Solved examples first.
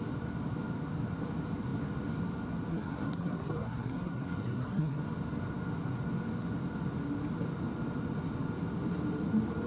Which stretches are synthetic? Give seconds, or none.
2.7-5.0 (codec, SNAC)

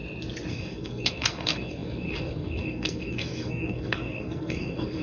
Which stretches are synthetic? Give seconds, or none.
0.5-5.0 (codec, SNAC)

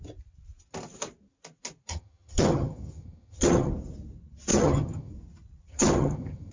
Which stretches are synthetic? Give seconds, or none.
1.9-3.7 (vocoder, HiFi-GAN); 4.5-5.1; 5.7-6.5

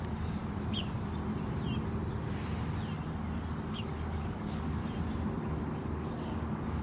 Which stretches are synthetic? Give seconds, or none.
0.0-0.4 (codec, DAC); 3.7-4.8; 5.8-6.8